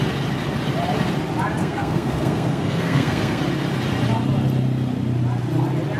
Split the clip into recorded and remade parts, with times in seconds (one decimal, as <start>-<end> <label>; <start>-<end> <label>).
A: 0.0-1.6 recorded; 1.6-3.4 remade; 3.4-6.0 recorded